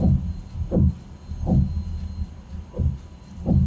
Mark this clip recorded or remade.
recorded